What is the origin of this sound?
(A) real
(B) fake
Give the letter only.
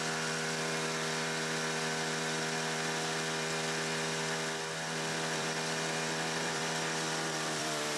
B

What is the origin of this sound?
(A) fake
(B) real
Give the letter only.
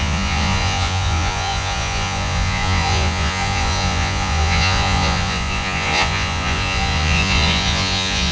A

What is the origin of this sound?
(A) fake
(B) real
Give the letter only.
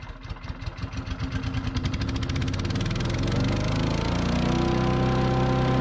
B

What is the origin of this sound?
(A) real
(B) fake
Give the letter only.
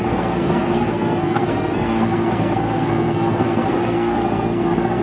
B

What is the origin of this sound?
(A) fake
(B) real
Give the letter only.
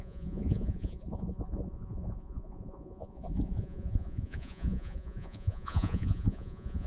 A